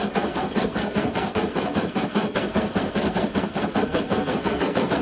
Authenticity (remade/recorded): remade